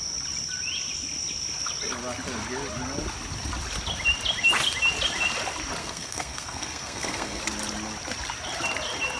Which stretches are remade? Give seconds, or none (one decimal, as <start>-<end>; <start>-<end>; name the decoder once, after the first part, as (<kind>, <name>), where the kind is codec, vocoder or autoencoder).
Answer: 5.8-7.4 (codec, SNAC)